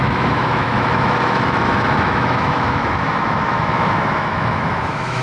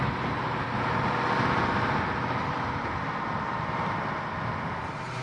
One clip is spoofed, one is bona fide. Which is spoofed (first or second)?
first